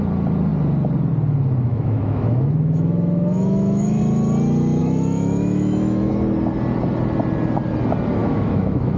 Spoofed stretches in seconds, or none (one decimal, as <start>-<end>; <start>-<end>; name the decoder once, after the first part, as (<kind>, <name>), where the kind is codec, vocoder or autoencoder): 1.7-4.0 (autoencoder, DAC-VAE); 4.8-6.1; 8.2-9.0